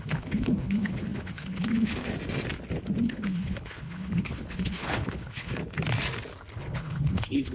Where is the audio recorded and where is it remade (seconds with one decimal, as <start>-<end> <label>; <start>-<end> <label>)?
0.0-2.1 remade; 2.1-3.0 recorded; 3.0-5.6 remade; 5.6-6.5 recorded; 6.5-7.5 remade